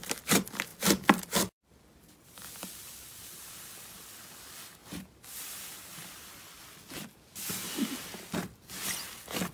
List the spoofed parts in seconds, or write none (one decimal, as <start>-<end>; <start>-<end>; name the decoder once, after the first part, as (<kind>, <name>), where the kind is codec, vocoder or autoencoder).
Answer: 0.7-4.2 (vocoder, BigVGAN v2); 4.8-7.9